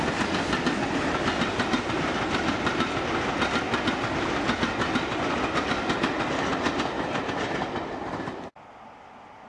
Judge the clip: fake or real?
real